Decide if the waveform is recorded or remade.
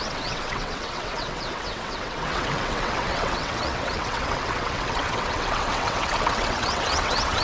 remade